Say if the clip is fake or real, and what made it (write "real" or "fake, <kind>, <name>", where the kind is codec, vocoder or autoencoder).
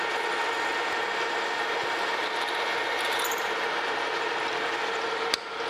real